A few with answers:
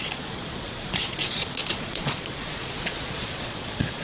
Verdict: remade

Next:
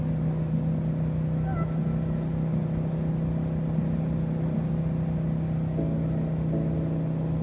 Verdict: recorded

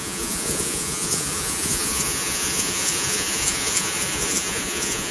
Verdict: remade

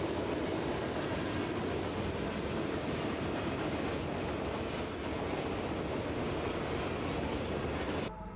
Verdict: recorded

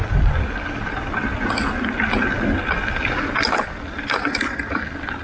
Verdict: recorded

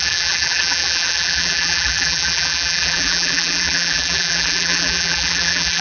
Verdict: remade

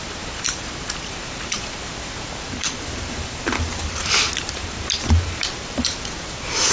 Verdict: remade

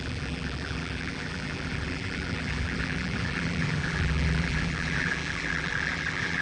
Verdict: remade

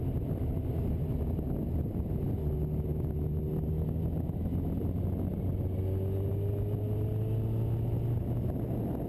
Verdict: recorded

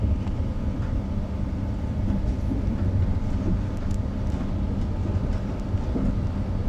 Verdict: recorded